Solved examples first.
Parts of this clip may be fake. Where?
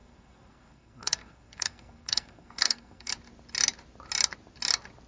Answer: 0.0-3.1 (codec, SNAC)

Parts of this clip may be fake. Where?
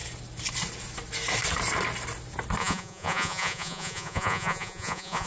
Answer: 2.6-5.3 (vocoder, Vocos)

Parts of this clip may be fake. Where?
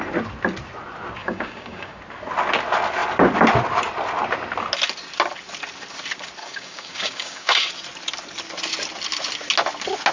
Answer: 1.2-2.0 (codec, DAC); 6.4-7.7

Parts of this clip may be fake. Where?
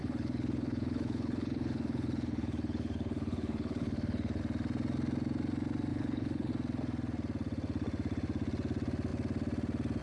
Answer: 0.0-4.4 (codec, HILCodec); 5.9-6.5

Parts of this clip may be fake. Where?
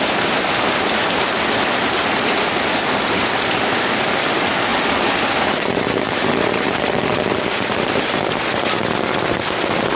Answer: 4.7-7.9 (vocoder, BigVGAN v2)